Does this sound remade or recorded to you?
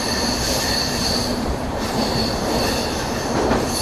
remade